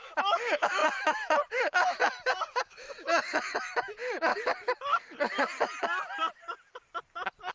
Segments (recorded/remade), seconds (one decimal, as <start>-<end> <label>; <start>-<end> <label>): 0.0-2.0 remade; 2.0-2.6 recorded; 2.6-4.3 remade; 4.3-7.5 recorded